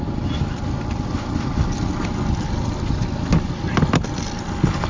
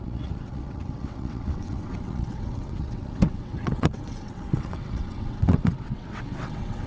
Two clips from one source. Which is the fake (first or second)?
second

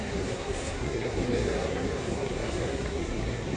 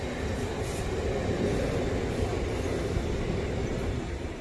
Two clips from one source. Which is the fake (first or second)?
first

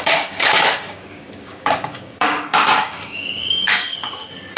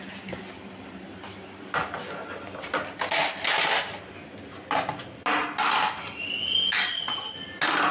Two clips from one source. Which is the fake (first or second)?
first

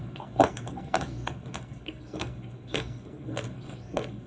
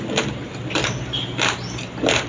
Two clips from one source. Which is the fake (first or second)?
first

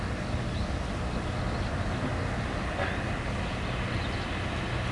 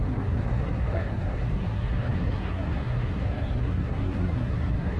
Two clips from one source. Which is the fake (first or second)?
second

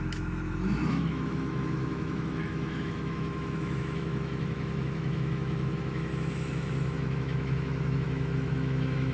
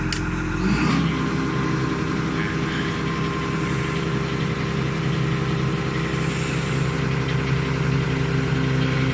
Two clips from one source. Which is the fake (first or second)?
first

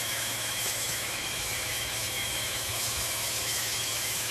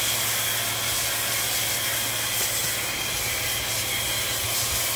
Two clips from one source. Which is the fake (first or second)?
first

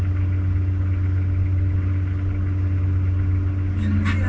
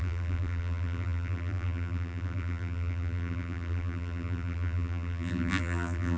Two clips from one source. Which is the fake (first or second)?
second